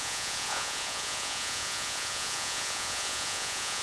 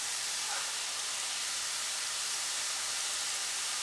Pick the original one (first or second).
second